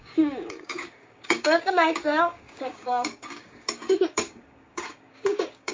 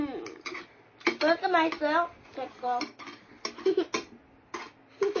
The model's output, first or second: first